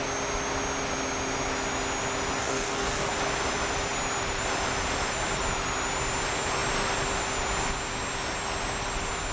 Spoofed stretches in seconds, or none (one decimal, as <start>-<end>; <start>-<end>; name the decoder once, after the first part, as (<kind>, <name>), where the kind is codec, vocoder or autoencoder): 2.4-3.1 (codec, DAC)

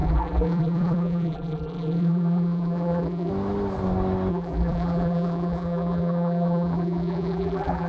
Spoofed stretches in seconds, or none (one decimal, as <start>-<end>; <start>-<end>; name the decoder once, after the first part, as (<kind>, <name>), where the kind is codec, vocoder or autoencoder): 0.0-3.3 (vocoder, BigVGAN v2); 4.3-7.9